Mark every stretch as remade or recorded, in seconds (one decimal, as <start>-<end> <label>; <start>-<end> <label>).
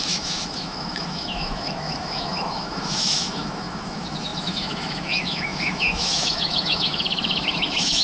0.0-8.0 remade